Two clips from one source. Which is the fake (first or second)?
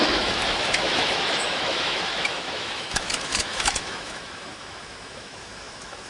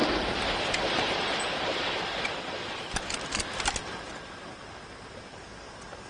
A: first